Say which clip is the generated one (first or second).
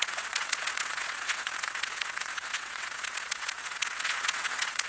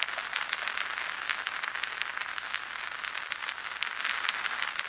first